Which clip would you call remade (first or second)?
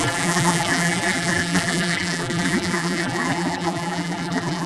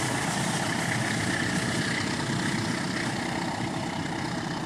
first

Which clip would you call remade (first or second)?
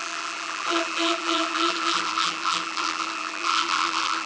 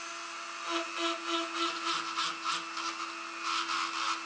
first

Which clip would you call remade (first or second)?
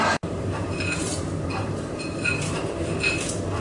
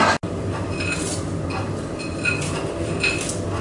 first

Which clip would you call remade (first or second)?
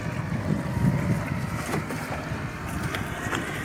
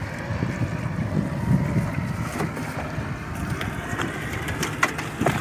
second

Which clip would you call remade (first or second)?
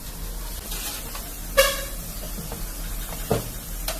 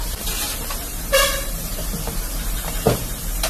second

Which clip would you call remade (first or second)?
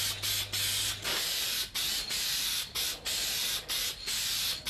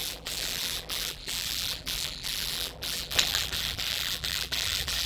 second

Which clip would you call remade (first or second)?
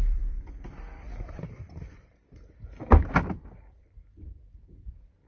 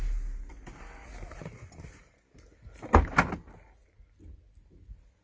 first